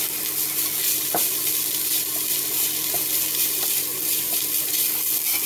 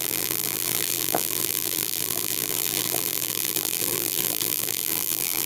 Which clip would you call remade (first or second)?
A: second